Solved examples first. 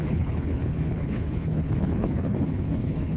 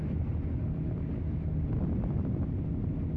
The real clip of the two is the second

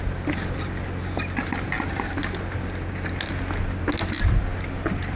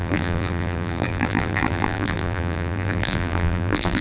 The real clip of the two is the first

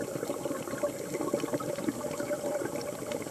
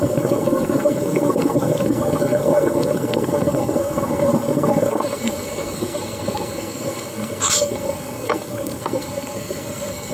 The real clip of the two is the first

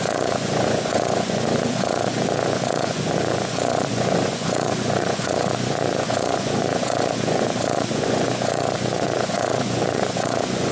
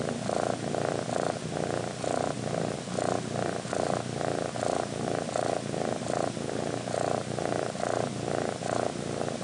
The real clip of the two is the second